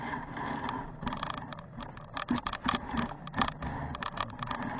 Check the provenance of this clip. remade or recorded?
remade